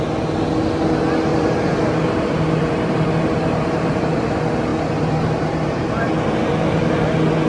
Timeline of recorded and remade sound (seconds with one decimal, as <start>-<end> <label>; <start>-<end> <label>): 0.0-1.3 recorded; 1.3-4.0 remade; 4.0-4.7 recorded; 4.7-6.1 remade; 6.1-7.5 recorded